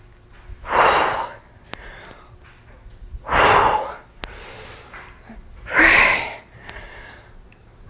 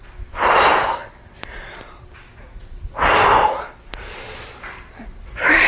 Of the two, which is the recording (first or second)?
first